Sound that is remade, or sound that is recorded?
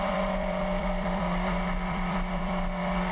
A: remade